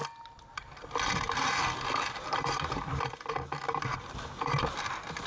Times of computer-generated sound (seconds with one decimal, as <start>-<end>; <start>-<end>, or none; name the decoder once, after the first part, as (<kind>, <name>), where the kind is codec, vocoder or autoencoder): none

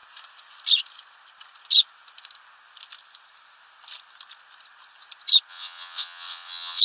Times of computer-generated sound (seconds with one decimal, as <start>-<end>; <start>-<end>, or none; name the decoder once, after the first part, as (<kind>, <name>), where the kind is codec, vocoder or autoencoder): 5.5-6.8 (vocoder, WaveNeXt)

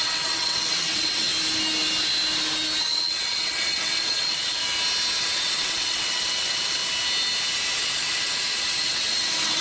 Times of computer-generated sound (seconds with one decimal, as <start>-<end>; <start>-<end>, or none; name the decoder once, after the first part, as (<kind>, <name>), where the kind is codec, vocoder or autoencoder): 0.0-1.3 (vocoder, WaveNeXt); 2.8-4.6; 5.2-6.8; 7.8-9.6